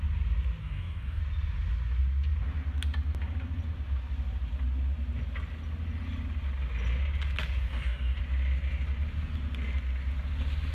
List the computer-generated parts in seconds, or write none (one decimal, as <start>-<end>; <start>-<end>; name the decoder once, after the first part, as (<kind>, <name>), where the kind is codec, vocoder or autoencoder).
0.6-1.2 (codec, DAC); 7.7-8.2